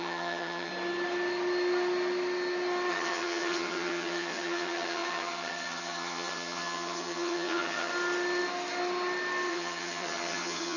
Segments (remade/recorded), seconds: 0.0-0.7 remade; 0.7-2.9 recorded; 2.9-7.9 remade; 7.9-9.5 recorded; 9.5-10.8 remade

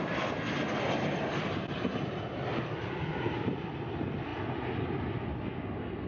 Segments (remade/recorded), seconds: 0.0-3.1 recorded; 3.1-3.7 remade; 3.7-4.3 recorded; 4.3-5.4 remade; 5.4-6.1 recorded

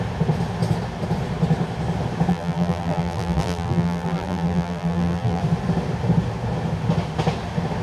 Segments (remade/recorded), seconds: 0.0-2.3 recorded; 2.3-5.4 remade; 5.4-7.8 recorded

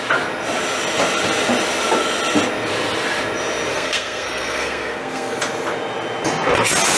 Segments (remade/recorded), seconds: 0.0-3.7 recorded; 3.7-5.4 remade; 5.4-7.0 recorded

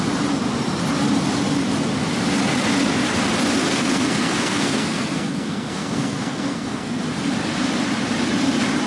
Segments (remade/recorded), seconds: 0.0-3.7 recorded; 3.7-7.0 remade; 7.0-8.9 recorded

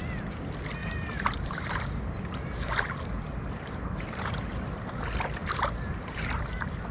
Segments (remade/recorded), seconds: 0.0-0.8 recorded; 0.8-4.9 remade; 4.9-5.4 recorded; 5.4-6.4 remade; 6.4-6.9 recorded

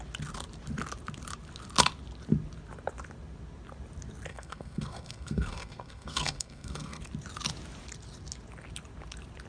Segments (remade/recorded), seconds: 0.0-4.3 recorded; 4.3-7.0 remade; 7.0-9.5 recorded

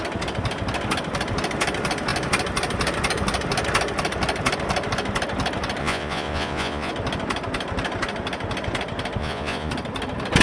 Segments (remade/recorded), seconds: 0.0-5.8 recorded; 5.8-6.9 remade; 6.9-9.2 recorded; 9.2-9.7 remade; 9.7-10.4 recorded